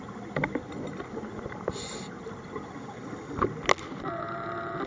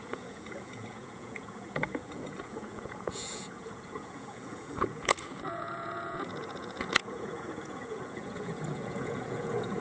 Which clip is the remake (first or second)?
second